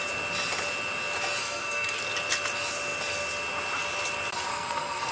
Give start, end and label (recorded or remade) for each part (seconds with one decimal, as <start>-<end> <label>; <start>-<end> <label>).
0.0-1.4 recorded; 1.4-2.0 remade; 2.0-4.5 recorded; 4.5-5.1 remade

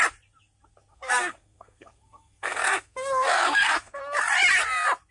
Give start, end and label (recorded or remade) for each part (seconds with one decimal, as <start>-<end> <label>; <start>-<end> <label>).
0.0-0.9 recorded; 0.9-4.0 remade; 4.0-5.1 recorded

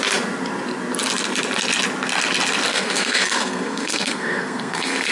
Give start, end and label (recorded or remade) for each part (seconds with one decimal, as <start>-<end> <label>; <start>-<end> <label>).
0.0-2.7 recorded; 2.7-5.1 remade

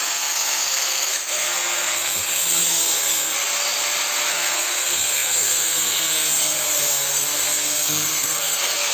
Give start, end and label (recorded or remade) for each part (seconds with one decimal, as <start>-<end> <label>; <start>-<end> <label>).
0.0-3.3 remade; 3.3-4.3 recorded; 4.3-8.9 remade

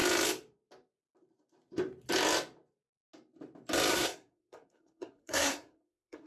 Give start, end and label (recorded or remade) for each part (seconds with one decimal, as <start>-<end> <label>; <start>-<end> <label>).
0.0-3.9 recorded; 3.9-6.3 remade

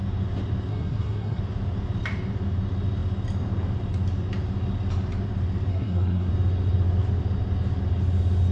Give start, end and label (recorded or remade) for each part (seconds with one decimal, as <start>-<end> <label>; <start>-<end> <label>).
0.0-0.7 recorded; 0.7-1.4 remade; 1.4-5.7 recorded; 5.7-6.3 remade; 6.3-8.5 recorded